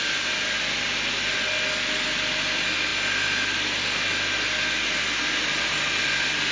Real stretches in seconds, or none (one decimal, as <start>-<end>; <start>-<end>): 0.0-6.5